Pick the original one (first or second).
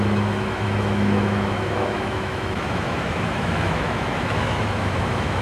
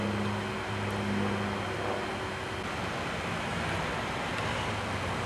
second